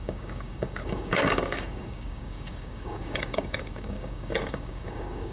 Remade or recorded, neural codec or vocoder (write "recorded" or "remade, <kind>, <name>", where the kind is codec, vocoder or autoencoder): remade, codec, DAC